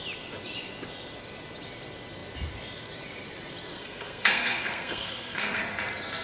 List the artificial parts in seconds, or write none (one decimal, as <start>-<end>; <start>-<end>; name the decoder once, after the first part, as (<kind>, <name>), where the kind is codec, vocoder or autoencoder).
3.7-5.6 (codec, SNAC)